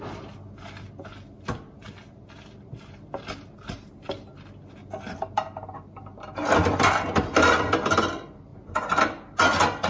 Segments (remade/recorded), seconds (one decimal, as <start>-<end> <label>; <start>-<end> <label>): 0.0-9.9 recorded

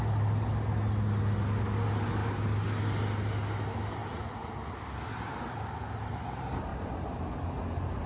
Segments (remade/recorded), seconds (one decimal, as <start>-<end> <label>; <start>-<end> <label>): 0.0-6.7 recorded; 6.7-8.1 remade

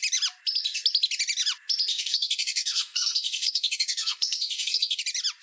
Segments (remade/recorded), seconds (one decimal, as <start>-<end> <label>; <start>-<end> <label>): 0.0-1.9 recorded; 1.9-5.0 remade; 5.0-5.4 recorded

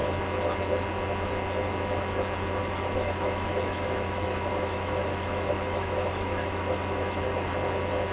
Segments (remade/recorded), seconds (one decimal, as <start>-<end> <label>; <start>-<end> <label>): 0.0-2.6 recorded; 2.6-7.5 remade; 7.5-8.1 recorded

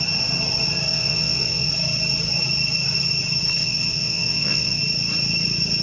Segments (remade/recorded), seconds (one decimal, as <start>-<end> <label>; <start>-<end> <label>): 0.0-0.9 recorded; 0.9-1.7 remade; 1.7-3.6 recorded; 3.6-4.8 remade; 4.8-5.8 recorded